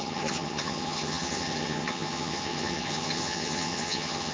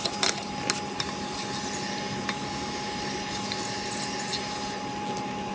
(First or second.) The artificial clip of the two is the first